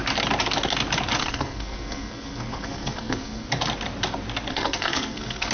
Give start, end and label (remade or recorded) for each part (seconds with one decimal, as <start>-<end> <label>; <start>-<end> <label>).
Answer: 0.0-1.2 recorded; 1.2-3.5 remade; 3.5-4.5 recorded; 4.5-5.5 remade